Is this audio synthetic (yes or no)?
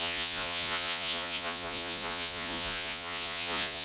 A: yes